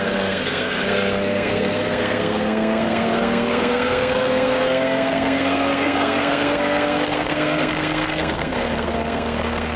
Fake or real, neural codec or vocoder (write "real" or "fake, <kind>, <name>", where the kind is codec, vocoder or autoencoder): fake, codec, SNAC